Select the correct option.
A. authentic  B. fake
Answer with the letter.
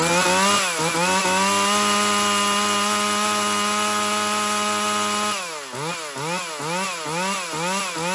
A